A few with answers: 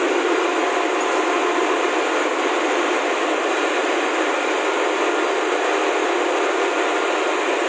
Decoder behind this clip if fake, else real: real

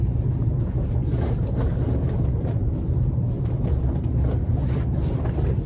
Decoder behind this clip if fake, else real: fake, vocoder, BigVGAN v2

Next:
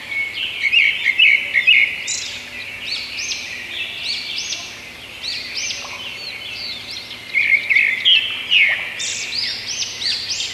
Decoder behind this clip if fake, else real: real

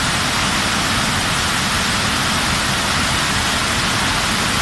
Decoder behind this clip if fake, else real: real